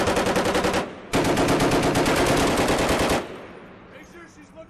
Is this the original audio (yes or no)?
yes